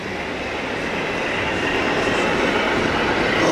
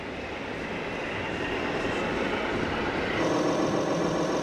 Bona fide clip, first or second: first